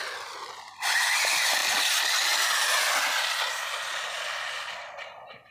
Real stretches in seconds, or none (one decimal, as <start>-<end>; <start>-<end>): 0.0-5.5